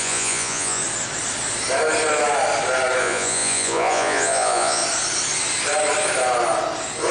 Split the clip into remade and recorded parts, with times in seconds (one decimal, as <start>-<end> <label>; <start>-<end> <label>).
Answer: 0.0-0.8 remade; 0.8-3.0 recorded; 3.0-4.8 remade; 4.8-7.1 recorded